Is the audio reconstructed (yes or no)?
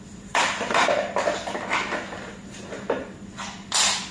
no